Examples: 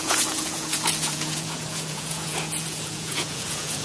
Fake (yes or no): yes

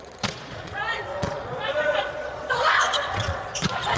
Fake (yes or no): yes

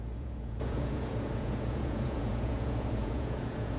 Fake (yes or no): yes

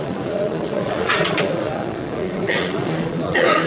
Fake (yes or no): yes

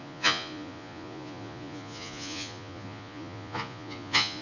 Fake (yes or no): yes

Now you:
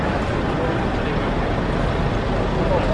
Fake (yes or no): no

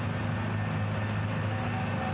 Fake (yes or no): no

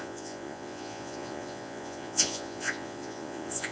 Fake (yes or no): yes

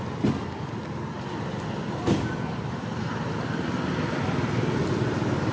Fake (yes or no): no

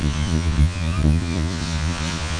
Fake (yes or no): yes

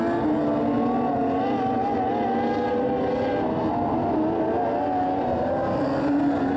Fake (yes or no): no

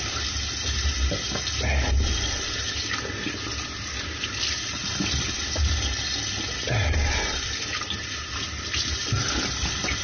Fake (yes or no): no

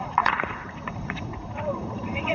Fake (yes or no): yes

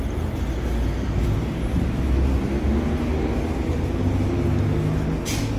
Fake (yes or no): no